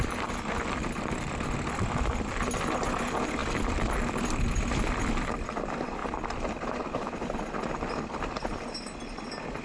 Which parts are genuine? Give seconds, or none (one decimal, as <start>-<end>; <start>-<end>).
0.0-6.0; 6.8-9.6